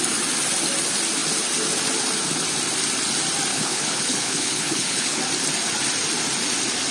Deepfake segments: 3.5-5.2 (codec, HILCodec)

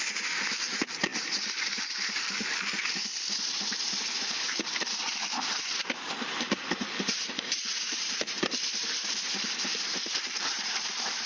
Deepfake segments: 0.0-3.1 (vocoder, BigVGAN v2); 4.0-11.3

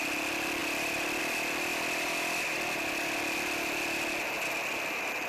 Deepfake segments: none

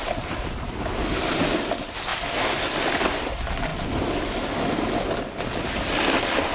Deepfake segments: none

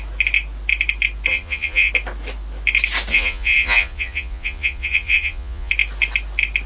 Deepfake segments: 1.3-1.9 (vocoder, Vocos); 3.1-5.7

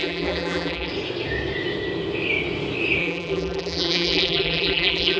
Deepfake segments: 0.0-0.9 (vocoder, BigVGAN v2); 3.0-5.2

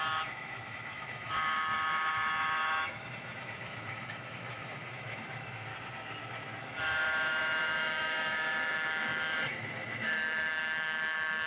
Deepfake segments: 0.0-5.7 (autoencoder, DAC-VAE); 6.6-11.5